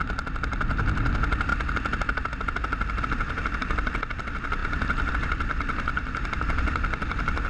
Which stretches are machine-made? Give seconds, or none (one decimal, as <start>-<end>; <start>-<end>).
0.0-1.5; 3.0-7.5